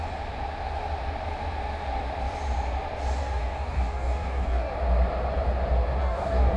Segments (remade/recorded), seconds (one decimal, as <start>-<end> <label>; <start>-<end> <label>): 0.0-3.2 recorded; 3.2-4.7 remade; 4.7-6.0 recorded; 6.0-6.6 remade